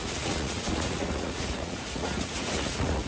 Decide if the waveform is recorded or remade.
remade